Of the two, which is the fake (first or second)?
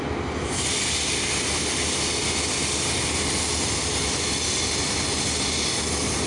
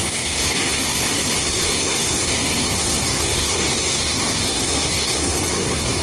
second